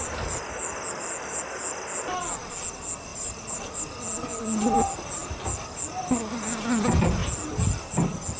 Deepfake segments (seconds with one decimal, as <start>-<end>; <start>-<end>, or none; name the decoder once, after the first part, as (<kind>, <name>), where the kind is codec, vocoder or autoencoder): 3.1-3.7 (vocoder, BigVGAN v2)